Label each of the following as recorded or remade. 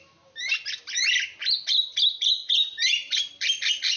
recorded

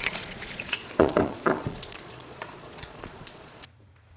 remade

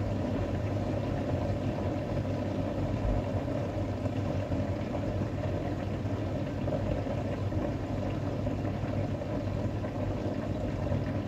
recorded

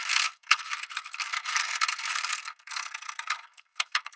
remade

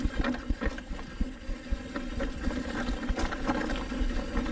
recorded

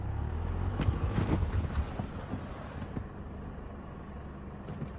recorded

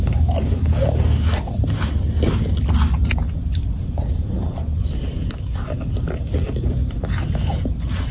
recorded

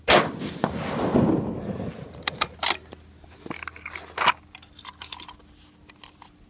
recorded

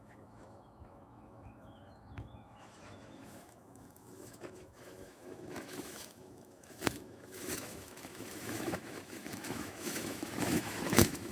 remade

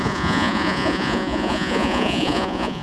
remade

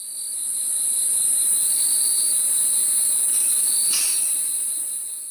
recorded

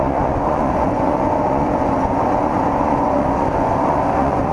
remade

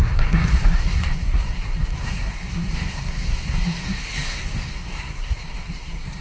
remade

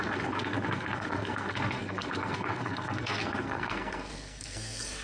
remade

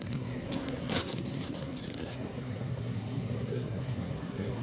remade